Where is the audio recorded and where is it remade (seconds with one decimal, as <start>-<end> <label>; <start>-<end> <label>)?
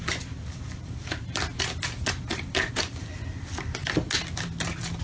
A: 0.0-1.5 remade; 1.5-2.7 recorded; 2.7-3.8 remade; 3.8-5.0 recorded